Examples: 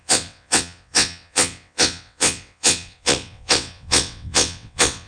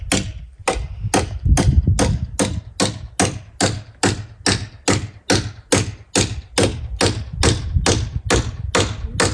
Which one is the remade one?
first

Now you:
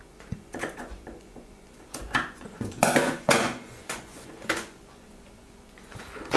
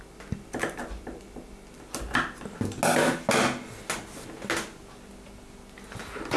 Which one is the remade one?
first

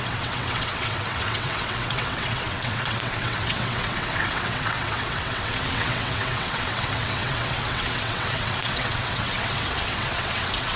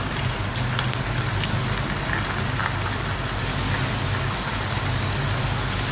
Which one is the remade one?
first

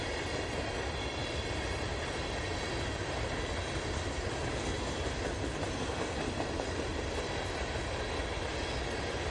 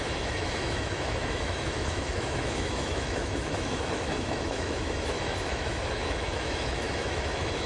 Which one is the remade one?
second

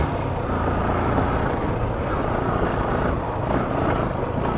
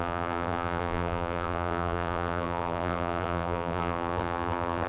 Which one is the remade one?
second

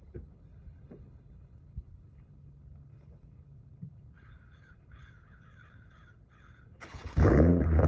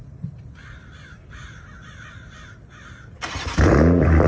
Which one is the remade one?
first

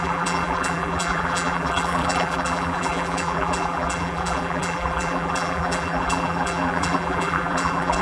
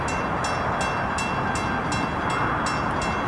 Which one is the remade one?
first